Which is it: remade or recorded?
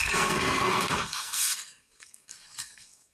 remade